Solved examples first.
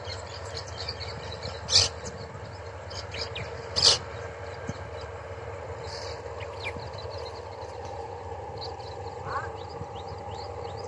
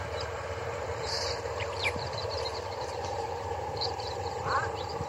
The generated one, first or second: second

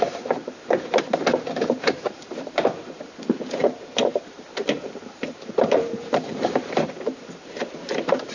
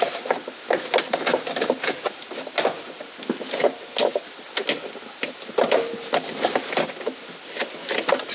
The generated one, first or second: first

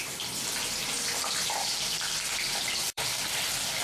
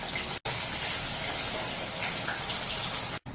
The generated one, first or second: first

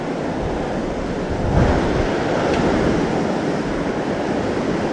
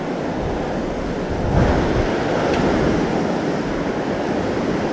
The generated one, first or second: first